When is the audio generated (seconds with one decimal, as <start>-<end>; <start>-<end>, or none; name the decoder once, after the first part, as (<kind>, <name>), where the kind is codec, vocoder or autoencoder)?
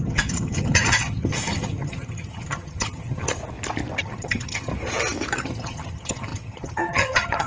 0.0-3.4 (vocoder, HiFi-GAN); 4.0-4.7; 5.4-7.5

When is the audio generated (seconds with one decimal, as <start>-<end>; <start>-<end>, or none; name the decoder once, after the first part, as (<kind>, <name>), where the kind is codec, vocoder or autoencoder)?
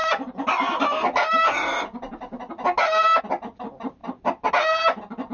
none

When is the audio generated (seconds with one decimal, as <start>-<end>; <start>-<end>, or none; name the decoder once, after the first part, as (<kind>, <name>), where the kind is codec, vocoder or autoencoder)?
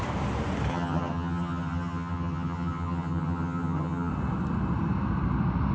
0.7-4.1 (vocoder, HiFi-GAN)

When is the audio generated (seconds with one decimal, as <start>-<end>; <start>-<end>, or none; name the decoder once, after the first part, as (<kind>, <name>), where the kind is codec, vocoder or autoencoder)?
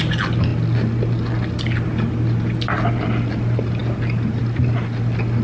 none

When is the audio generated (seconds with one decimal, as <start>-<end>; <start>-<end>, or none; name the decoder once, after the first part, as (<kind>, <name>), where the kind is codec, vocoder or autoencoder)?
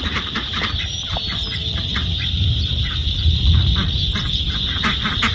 none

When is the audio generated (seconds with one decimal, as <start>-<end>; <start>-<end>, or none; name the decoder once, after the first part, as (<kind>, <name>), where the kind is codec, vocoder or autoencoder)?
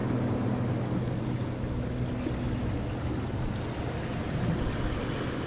none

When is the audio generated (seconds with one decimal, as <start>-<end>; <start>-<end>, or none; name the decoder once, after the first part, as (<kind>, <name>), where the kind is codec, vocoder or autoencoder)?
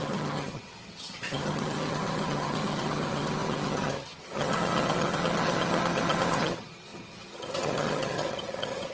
0.0-8.9 (vocoder, HiFi-GAN)